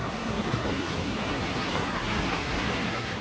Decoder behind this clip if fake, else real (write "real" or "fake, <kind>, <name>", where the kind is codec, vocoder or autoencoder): fake, codec, SNAC